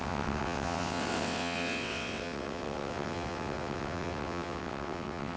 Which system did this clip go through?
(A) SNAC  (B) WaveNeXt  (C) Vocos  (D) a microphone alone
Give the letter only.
B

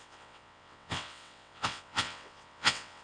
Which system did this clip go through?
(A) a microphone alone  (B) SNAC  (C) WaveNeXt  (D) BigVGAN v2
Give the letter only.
C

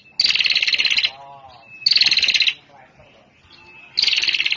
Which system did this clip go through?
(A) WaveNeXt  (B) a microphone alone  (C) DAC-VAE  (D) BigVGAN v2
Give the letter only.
B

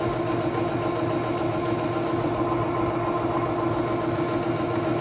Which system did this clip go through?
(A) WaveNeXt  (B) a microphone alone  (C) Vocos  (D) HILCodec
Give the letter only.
B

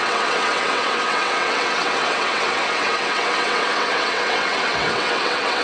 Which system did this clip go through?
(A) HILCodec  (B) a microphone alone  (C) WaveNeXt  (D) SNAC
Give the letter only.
C